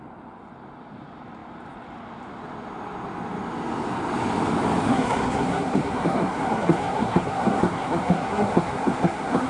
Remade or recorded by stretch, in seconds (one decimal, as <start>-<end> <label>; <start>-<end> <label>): 0.0-4.9 recorded; 4.9-9.5 remade